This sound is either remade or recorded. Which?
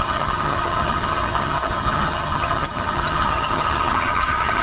remade